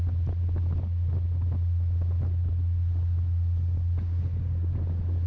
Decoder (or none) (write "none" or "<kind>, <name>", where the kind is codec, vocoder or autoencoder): none